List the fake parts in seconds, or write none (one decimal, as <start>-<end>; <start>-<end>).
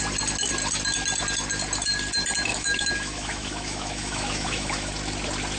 2.5-4.9